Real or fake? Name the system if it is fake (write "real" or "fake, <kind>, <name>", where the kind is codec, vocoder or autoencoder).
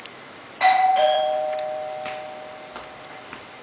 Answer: fake, vocoder, BigVGAN v2